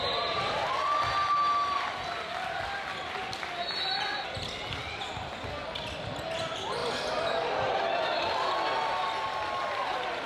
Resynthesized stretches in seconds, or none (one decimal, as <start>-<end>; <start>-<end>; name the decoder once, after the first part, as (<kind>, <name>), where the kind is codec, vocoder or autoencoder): none